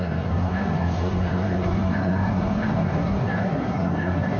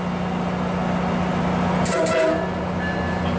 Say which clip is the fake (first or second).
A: first